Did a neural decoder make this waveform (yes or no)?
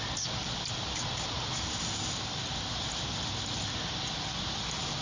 no